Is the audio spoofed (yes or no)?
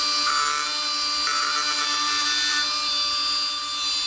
no